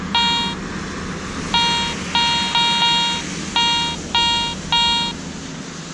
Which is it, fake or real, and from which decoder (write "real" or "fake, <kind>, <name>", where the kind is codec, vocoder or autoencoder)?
real